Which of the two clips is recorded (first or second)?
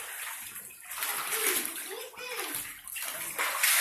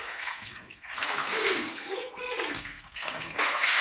first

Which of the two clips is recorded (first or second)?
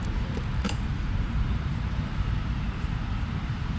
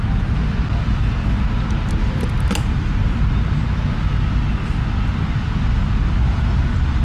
second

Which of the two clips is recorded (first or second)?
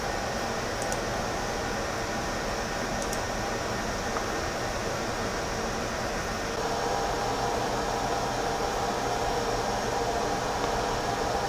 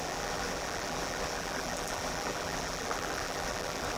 first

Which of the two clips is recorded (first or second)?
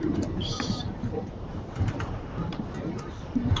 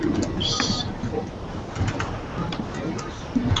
second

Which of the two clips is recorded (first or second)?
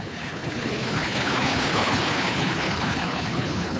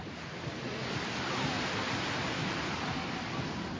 second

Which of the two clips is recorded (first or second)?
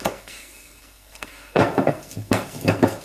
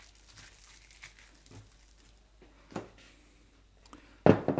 second